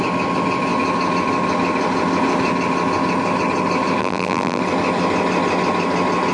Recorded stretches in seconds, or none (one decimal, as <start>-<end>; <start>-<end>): 0.0-4.0; 4.6-6.3